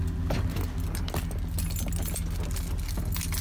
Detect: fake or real real